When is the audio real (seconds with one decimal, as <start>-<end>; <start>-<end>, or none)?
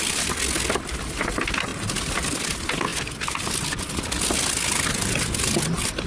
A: 0.0-1.7; 2.3-6.1